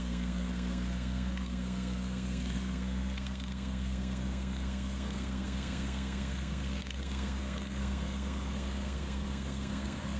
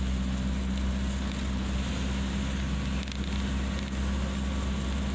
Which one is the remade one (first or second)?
first